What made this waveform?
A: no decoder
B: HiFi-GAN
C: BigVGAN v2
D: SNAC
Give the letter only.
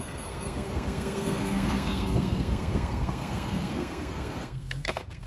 D